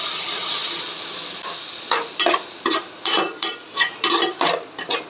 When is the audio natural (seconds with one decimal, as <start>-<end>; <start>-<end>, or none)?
0.0-5.1